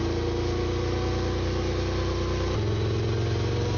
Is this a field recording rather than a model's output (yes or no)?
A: yes